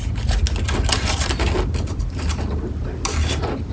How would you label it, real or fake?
real